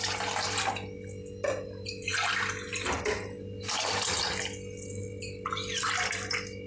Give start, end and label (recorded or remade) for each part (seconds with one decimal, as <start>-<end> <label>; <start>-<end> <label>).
0.0-6.7 recorded